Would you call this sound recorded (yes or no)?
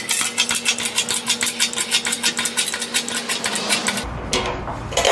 yes